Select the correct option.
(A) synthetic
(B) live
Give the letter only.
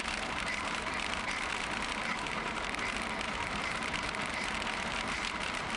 A